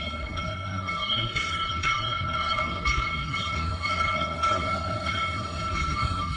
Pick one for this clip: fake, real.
fake